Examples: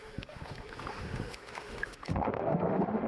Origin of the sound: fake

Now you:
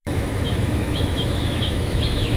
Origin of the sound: fake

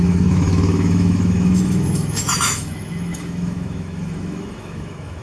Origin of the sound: fake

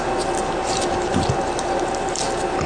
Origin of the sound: real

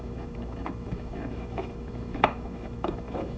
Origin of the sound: fake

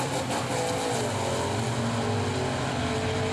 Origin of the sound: real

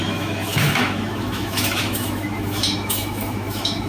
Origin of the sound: fake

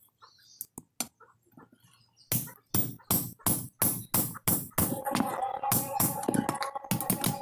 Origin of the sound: real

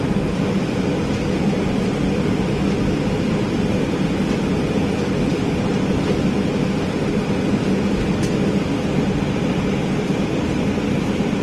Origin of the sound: real